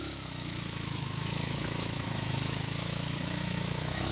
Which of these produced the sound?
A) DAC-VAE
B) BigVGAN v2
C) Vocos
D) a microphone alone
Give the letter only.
A